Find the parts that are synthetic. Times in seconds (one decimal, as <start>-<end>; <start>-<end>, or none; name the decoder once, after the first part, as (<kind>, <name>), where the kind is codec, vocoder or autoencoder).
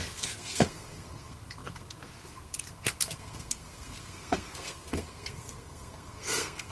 0.0-6.7 (codec, SNAC)